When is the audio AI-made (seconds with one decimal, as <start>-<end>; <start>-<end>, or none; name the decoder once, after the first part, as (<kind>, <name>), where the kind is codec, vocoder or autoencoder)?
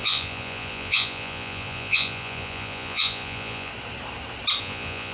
0.0-3.7 (vocoder, Vocos); 4.6-5.1